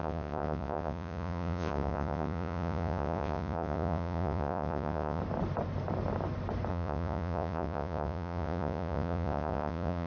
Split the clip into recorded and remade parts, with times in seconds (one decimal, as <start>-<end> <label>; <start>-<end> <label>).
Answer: 0.0-5.2 remade; 5.2-6.7 recorded; 6.7-10.1 remade